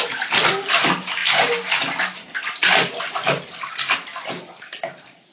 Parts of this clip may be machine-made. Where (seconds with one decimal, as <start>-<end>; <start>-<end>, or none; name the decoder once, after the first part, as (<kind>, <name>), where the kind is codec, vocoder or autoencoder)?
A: none